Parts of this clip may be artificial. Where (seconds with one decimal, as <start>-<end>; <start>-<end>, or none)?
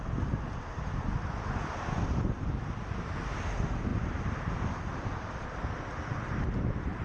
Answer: none